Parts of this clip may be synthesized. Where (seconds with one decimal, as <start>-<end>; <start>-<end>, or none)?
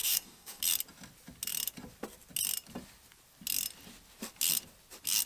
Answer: 0.0-0.6